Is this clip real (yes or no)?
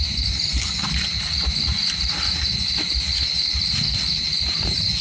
yes